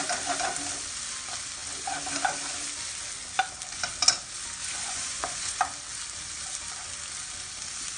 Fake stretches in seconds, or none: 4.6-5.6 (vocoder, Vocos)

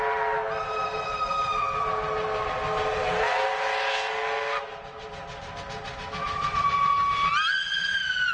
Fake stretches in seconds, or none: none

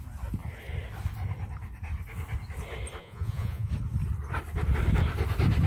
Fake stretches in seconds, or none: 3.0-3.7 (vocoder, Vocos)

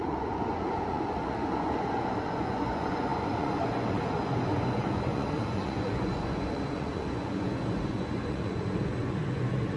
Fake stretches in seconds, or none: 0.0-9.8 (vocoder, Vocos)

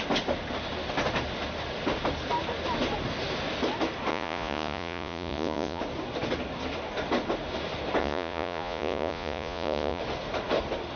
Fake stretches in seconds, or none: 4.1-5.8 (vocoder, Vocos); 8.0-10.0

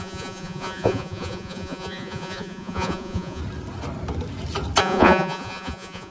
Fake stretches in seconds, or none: 0.0-3.4 (vocoder, Vocos); 4.8-6.1

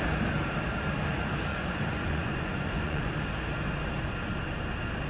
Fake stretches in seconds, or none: 1.5-3.1 (vocoder, Vocos)

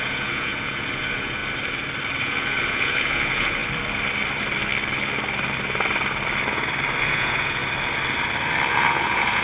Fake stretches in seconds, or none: 0.0-1.4 (vocoder, Vocos); 2.2-3.6; 7.0-7.6; 8.7-9.4